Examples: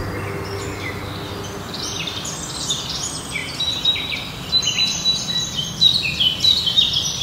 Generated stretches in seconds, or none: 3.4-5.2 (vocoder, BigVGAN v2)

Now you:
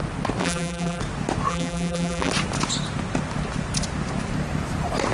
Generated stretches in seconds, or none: 0.4-1.0 (vocoder, BigVGAN v2); 1.5-2.3

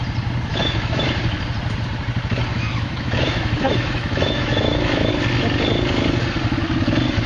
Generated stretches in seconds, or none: 0.5-1.0 (autoencoder, DAC-VAE); 2.5-5.1

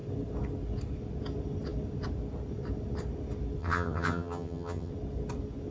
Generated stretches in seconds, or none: 3.6-4.9 (vocoder, HiFi-GAN)